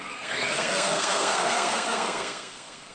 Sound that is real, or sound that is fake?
fake